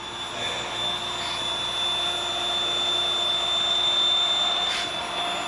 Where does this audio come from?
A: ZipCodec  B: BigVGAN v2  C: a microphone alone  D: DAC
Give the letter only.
C